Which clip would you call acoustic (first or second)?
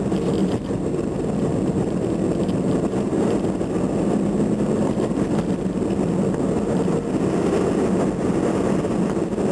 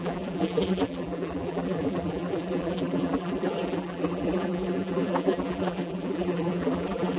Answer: first